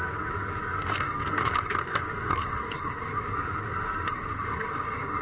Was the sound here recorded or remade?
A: remade